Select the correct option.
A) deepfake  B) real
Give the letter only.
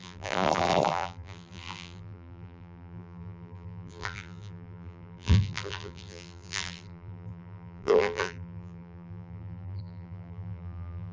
A